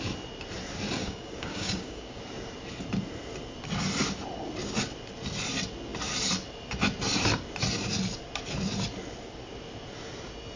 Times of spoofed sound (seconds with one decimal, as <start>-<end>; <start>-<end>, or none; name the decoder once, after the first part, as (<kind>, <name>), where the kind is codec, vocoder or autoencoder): 1.0-2.2 (codec, DAC)